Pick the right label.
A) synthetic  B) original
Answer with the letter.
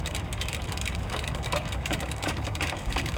A